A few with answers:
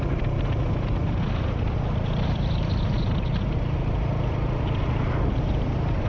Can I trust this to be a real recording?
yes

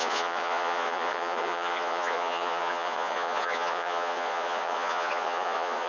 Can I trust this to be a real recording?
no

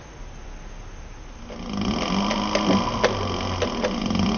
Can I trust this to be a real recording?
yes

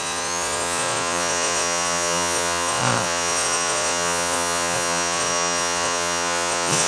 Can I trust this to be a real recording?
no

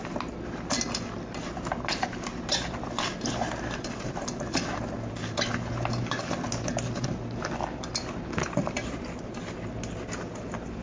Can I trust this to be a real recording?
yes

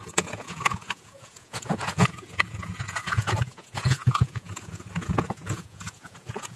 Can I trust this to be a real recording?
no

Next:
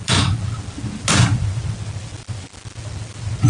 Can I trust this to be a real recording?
yes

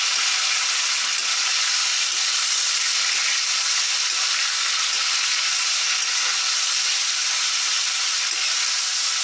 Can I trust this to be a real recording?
yes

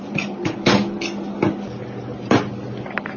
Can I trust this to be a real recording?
yes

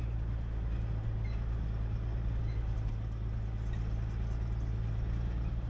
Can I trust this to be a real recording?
yes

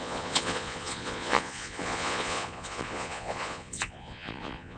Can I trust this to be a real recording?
no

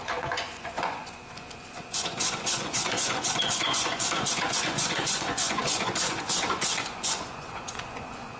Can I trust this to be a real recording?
no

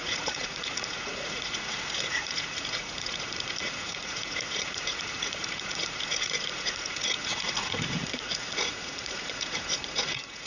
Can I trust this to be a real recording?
no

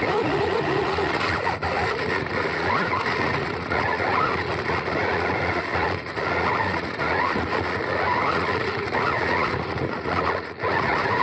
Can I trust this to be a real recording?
no